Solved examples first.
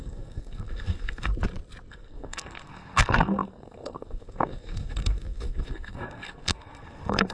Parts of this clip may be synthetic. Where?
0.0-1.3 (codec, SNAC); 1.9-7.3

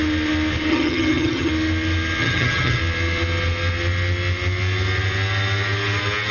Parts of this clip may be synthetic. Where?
0.7-1.5 (vocoder, HiFi-GAN); 2.2-2.8

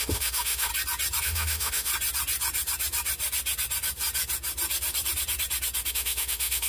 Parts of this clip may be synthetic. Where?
0.0-0.7 (autoencoder, DAC-VAE); 1.2-1.9; 5.9-6.7

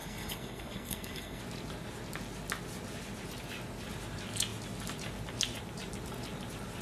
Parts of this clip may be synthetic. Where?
0.0-1.4 (codec, SNAC)

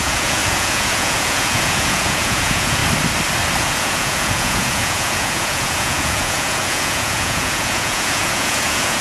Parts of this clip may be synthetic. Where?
0.0-2.8 (vocoder, Vocos); 3.6-9.0

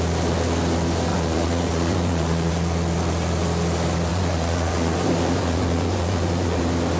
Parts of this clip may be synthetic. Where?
1.1-2.5 (vocoder, Vocos); 4.1-6.6

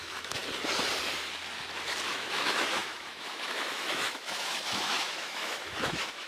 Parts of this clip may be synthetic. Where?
0.0-0.4 (autoencoder, DAC-VAE); 2.1-6.3